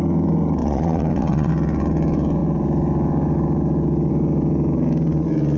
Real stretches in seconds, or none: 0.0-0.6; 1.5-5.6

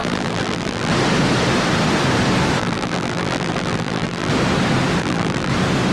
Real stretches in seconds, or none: 0.9-2.6; 4.3-5.0; 5.5-5.9

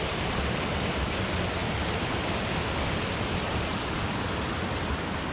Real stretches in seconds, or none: 0.0-5.3

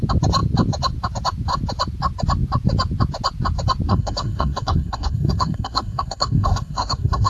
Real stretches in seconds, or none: 0.0-3.9